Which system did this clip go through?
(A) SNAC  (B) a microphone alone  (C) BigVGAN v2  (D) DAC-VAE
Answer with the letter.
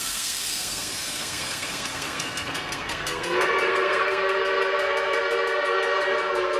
A